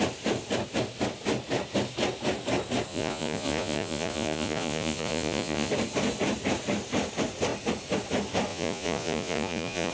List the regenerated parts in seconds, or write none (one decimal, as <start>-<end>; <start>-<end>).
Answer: 2.9-5.7; 8.5-9.9

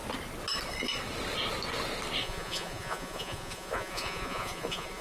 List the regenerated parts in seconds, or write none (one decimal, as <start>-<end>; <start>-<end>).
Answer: 2.2-5.0

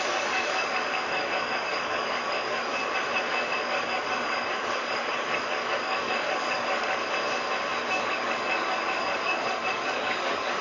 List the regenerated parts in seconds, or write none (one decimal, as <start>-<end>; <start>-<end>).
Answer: 0.0-2.8; 3.3-7.0; 7.9-10.6